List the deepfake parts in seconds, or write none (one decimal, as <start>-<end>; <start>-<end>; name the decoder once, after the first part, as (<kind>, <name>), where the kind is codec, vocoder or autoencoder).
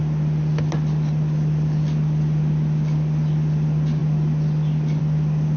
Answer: none